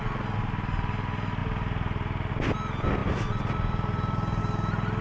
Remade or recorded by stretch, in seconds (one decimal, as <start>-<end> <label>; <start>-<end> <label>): 0.0-5.0 recorded